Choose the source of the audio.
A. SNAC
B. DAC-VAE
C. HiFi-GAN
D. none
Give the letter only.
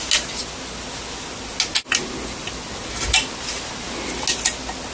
D